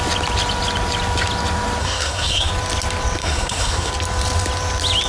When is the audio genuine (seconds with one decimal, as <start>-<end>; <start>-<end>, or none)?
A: 0.0-1.8; 2.5-3.2; 3.9-5.1